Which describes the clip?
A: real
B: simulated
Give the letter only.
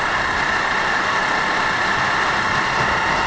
A